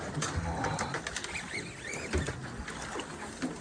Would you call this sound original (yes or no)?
yes